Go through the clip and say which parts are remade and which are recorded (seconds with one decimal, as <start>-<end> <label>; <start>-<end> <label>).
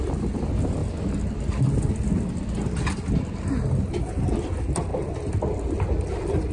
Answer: 0.0-6.5 recorded